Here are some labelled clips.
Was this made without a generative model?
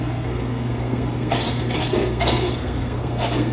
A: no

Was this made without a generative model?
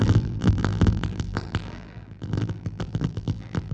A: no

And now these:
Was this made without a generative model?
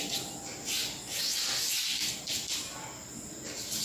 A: yes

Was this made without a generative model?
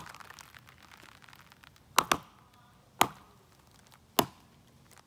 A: yes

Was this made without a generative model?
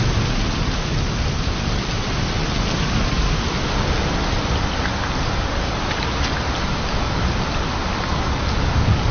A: yes